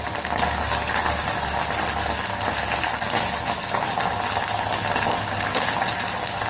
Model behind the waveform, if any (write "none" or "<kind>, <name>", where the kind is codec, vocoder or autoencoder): none